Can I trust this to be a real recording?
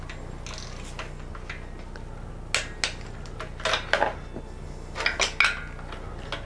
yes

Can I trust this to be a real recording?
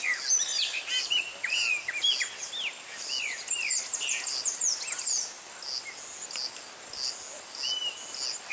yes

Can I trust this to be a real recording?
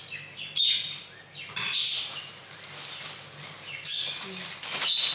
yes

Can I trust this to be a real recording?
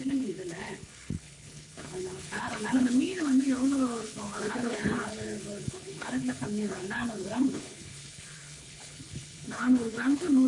no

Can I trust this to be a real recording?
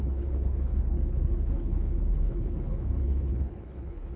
no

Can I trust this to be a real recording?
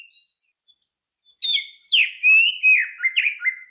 yes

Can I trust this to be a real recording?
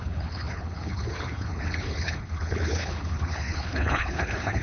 no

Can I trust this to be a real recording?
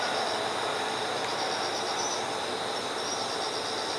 yes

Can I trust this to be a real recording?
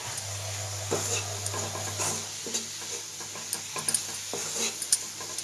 yes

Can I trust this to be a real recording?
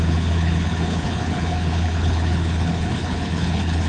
no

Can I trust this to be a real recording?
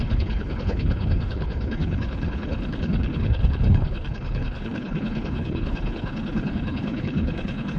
no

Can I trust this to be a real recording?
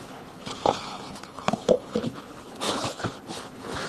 no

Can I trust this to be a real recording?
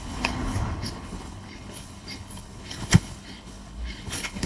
no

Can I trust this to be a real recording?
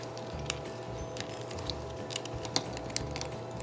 yes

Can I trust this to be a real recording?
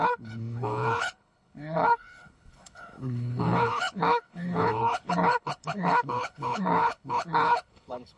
no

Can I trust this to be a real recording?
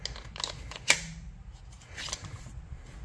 yes